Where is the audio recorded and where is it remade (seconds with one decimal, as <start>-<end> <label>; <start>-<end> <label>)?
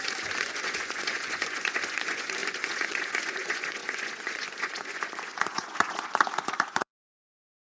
0.0-7.6 remade